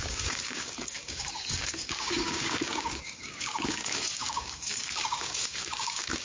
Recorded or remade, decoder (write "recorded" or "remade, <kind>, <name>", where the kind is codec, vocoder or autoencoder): remade, codec, DAC